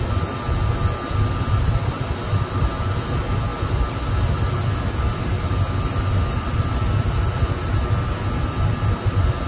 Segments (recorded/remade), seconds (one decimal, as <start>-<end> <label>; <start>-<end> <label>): 0.0-9.5 recorded